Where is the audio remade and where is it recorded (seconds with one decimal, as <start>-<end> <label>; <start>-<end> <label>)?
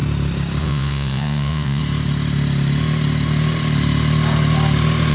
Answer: 0.0-0.6 recorded; 0.6-1.8 remade; 1.8-5.1 recorded